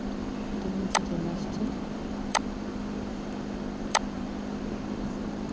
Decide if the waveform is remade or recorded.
remade